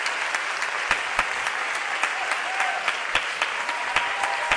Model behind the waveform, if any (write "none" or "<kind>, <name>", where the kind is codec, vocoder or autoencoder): none